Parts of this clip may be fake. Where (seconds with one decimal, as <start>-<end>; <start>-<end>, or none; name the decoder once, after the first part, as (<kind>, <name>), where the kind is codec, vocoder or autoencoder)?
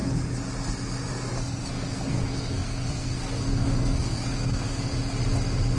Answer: 1.7-4.9 (codec, SNAC)